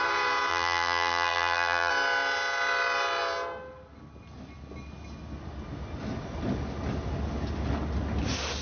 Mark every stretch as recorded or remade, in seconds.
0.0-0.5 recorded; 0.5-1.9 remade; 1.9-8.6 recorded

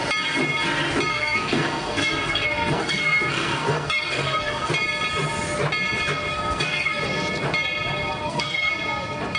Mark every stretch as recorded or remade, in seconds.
0.0-1.1 recorded; 1.1-4.7 remade; 4.7-6.3 recorded; 6.3-7.0 remade; 7.0-8.2 recorded; 8.2-8.7 remade; 8.7-9.4 recorded

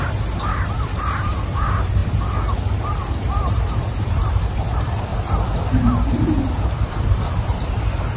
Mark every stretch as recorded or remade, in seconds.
0.0-2.0 remade; 2.0-3.1 recorded; 3.1-5.1 remade; 5.1-6.4 recorded; 6.4-8.2 remade